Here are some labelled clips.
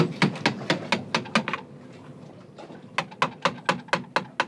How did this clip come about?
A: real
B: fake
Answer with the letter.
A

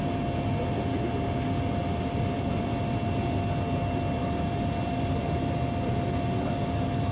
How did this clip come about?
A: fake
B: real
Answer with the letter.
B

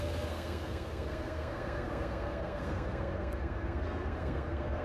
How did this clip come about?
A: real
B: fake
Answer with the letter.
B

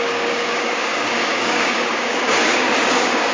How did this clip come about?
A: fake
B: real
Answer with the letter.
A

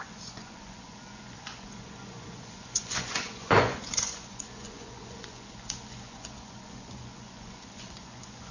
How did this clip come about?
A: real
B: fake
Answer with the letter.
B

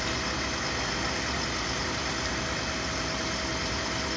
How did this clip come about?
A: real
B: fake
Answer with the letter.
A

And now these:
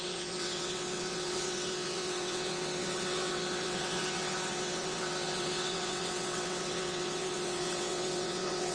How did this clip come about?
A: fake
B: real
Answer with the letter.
A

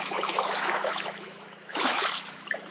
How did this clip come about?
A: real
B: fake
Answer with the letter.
B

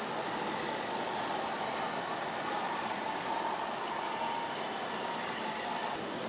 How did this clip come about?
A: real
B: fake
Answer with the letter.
A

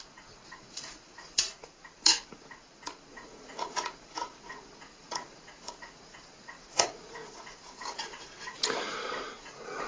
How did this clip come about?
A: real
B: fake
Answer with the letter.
B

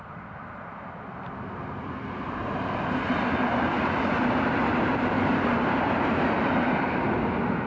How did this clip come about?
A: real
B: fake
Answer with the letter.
A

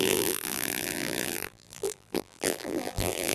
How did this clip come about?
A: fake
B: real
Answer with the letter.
A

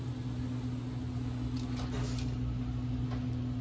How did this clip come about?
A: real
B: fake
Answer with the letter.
A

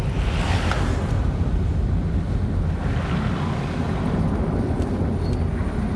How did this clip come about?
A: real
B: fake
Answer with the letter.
A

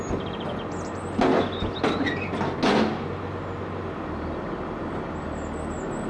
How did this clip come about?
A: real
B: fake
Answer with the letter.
A